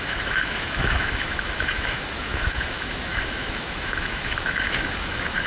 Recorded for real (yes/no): no